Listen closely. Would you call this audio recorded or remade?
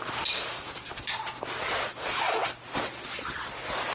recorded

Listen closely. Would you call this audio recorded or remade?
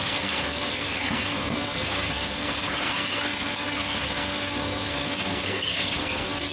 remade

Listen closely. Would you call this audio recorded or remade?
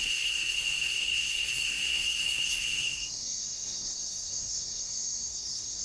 remade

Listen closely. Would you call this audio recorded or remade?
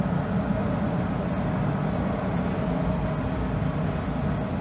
recorded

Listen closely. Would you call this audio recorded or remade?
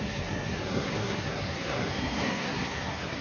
remade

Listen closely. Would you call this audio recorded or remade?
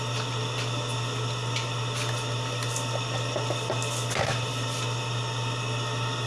recorded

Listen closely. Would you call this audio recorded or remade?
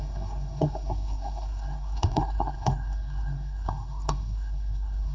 remade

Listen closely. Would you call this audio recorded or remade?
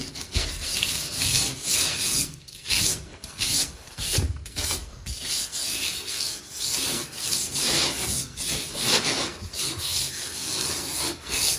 remade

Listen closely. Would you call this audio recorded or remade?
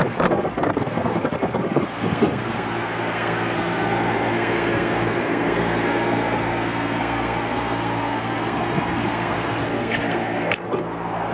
remade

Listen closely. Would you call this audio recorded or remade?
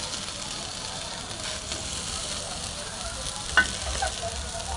recorded